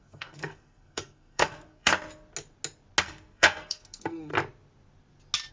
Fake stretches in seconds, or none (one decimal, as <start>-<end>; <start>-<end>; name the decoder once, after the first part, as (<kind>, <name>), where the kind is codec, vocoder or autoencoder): 0.0-1.9 (codec, SNAC); 3.0-4.3